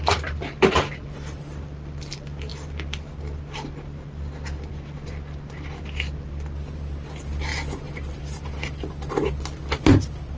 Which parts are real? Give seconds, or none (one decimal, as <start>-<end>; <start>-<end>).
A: 0.0-10.4